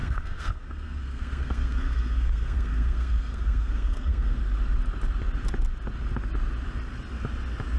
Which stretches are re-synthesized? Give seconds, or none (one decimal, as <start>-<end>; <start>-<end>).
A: 0.0-4.4